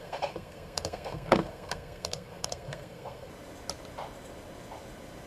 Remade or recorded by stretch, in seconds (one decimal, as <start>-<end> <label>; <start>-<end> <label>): 0.0-3.3 remade; 3.3-5.3 recorded